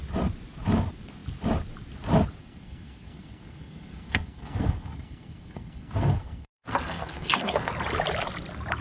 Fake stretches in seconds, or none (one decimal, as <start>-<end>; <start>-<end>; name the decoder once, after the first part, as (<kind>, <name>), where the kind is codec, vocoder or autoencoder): 2.4-7.7 (codec, SNAC)